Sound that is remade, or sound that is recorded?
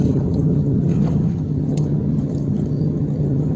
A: remade